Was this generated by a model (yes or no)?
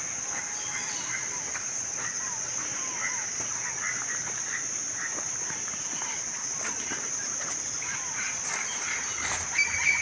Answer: no